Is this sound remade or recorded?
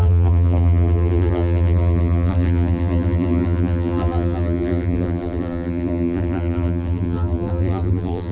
remade